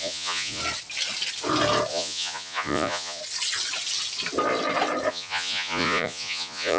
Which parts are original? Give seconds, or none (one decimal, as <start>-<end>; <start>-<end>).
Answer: 0.6-1.9; 3.2-5.1